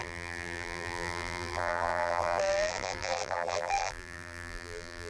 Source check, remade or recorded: remade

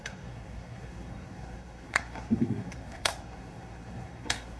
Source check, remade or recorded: remade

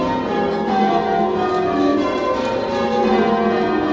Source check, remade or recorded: recorded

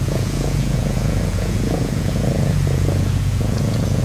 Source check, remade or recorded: remade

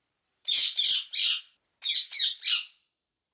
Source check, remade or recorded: remade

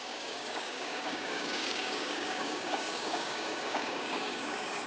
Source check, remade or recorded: remade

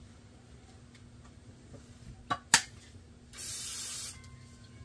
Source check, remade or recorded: recorded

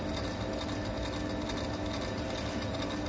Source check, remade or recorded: recorded